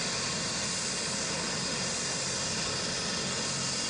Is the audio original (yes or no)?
yes